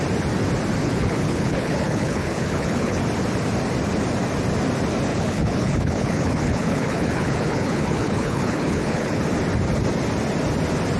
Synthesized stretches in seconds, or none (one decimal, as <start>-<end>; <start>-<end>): 0.8-3.0; 5.1-9.2